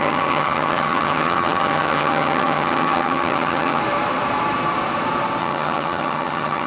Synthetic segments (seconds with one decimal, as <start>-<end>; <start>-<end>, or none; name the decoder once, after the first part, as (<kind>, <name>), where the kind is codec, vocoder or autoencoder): 0.0-3.8 (vocoder, HiFi-GAN); 5.4-6.7